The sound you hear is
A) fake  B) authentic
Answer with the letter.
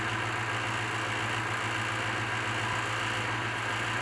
B